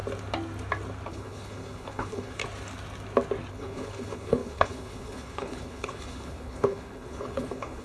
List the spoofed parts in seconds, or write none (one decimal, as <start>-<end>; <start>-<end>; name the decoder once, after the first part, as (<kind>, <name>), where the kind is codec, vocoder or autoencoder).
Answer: 1.1-2.4 (codec, HILCodec); 3.5-7.8